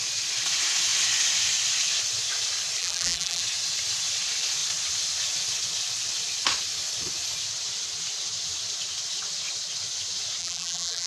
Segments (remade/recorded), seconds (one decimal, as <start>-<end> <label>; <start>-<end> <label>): 0.0-2.8 recorded; 2.8-3.4 remade; 3.4-10.4 recorded; 10.4-11.1 remade